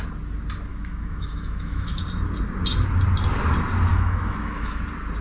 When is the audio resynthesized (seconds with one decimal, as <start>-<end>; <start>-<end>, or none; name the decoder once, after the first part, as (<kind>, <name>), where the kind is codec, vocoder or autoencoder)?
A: 0.7-2.0 (autoencoder, DAC-VAE); 3.9-4.8